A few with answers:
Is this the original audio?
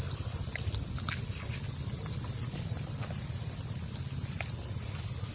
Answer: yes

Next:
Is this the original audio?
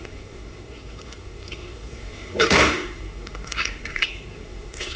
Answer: no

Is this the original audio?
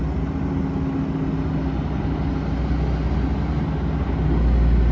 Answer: yes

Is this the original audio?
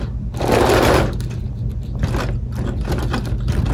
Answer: yes